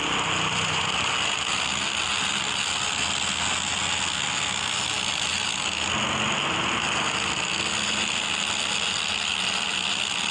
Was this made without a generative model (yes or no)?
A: yes